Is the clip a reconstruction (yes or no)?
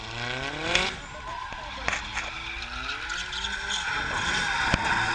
no